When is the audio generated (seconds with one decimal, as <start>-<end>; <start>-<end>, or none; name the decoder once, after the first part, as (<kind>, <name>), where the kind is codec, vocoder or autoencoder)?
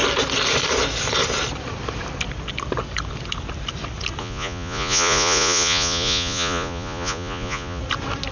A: 4.2-7.8 (vocoder, Vocos)